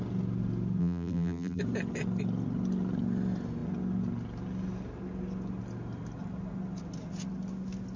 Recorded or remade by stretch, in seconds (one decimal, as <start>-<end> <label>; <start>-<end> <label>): 0.0-0.8 recorded; 0.8-1.6 remade; 1.6-8.0 recorded